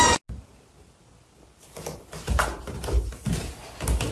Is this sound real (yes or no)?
yes